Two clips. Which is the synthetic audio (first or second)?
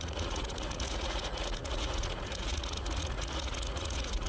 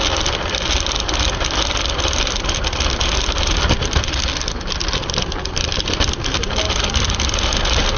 first